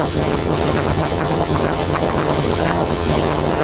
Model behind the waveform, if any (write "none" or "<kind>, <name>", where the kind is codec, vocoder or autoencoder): vocoder, HiFi-GAN